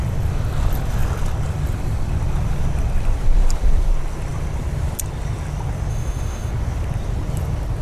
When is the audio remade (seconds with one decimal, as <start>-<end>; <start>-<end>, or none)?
5.9-6.5